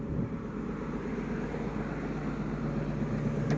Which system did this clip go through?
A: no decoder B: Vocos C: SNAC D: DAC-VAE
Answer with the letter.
A